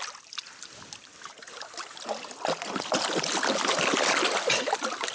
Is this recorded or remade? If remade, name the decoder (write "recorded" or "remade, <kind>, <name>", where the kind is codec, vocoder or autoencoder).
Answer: recorded